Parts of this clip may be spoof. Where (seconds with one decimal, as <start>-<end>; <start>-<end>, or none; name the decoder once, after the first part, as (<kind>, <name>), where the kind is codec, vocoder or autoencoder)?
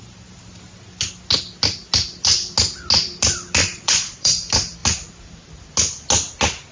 3.6-4.3 (vocoder, Vocos)